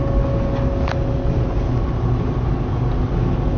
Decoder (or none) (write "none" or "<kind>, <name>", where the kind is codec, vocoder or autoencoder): none